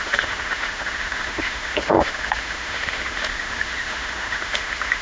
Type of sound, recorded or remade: remade